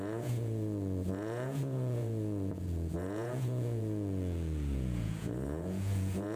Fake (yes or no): yes